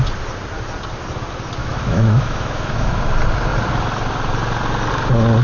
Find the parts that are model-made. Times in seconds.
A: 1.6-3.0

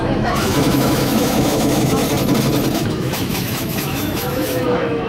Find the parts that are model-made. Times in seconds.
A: 0.0-2.0; 2.7-5.1

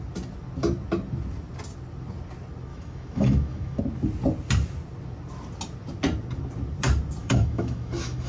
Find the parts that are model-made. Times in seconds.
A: 2.7-3.8; 7.2-8.3

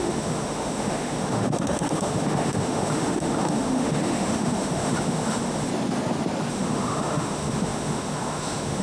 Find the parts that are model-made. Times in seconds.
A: 0.0-5.7; 6.5-8.8